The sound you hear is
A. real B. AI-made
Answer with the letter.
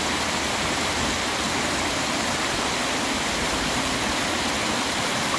B